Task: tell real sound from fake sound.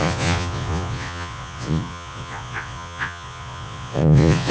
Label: fake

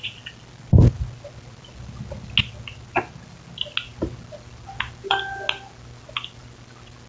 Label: real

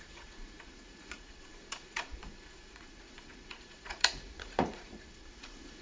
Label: fake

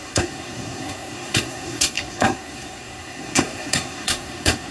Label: fake